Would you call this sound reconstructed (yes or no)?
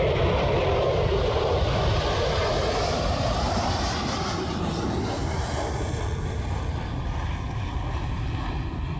yes